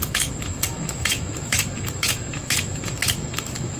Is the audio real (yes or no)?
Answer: no